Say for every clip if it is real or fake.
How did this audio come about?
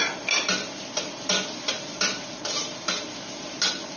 real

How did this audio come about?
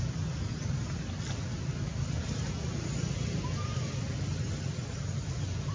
real